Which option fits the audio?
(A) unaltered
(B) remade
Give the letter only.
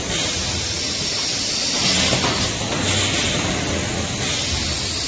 A